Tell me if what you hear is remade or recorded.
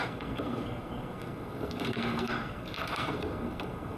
remade